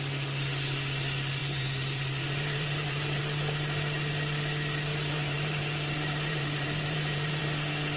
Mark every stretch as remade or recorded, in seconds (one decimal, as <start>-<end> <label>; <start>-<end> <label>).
0.0-1.4 recorded; 1.4-3.2 remade; 3.2-4.9 recorded; 4.9-7.4 remade; 7.4-8.0 recorded